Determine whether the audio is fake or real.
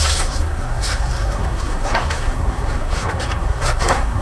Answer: fake